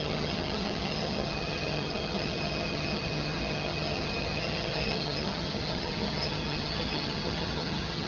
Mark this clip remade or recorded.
remade